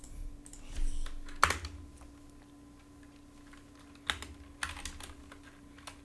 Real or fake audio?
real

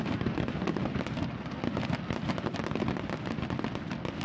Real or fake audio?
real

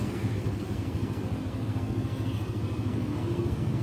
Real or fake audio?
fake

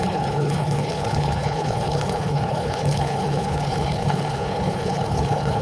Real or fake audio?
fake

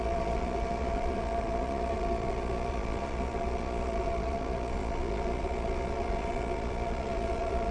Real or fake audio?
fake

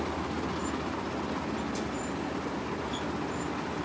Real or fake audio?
real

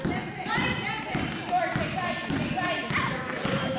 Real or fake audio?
real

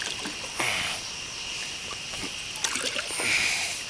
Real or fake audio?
real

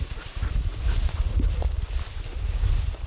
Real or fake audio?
real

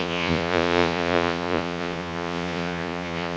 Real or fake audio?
fake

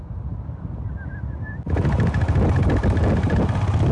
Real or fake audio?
real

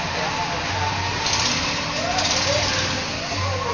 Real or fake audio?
real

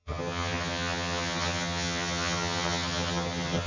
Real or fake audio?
fake